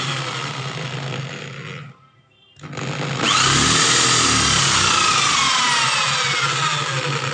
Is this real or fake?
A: real